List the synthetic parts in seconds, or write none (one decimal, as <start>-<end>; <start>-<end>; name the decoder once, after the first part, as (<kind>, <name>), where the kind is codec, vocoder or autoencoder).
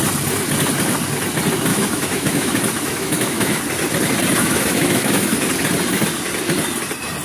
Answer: 1.7-3.6 (autoencoder, DAC-VAE); 4.4-5.5